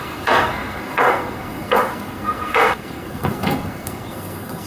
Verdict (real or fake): fake